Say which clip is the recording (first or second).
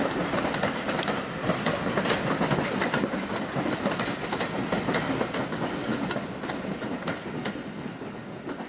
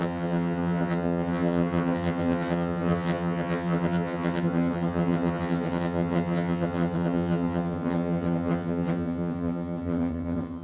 first